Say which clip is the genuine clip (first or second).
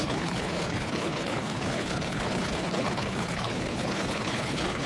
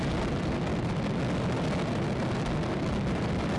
second